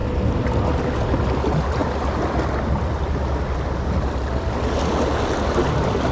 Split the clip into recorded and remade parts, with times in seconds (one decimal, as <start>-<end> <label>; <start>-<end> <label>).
0.0-6.1 recorded